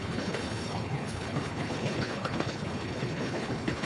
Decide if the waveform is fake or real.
fake